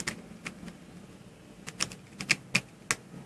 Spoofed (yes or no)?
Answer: no